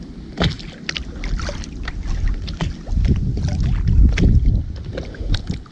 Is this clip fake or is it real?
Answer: real